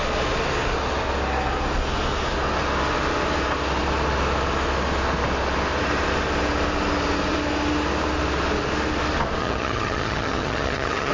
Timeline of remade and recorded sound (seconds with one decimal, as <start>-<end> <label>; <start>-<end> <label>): 0.0-9.4 recorded; 9.4-11.1 remade